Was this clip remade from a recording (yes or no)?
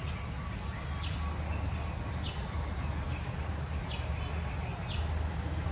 no